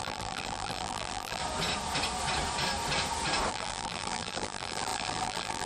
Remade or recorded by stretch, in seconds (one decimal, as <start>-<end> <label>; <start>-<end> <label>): 0.0-1.4 remade; 1.4-3.5 recorded; 3.5-5.7 remade